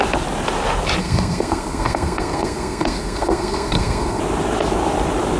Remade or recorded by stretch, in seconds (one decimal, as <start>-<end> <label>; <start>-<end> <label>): 0.0-1.0 recorded; 1.0-4.2 remade; 4.2-5.4 recorded